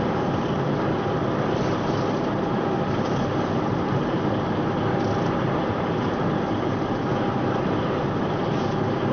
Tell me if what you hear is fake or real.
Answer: fake